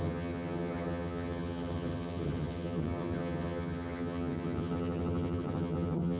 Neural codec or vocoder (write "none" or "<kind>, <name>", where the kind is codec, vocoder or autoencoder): vocoder, HiFi-GAN